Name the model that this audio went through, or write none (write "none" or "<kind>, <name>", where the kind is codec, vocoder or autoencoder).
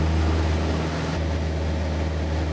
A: none